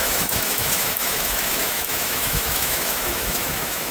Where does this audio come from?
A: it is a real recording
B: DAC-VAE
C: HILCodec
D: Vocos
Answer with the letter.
B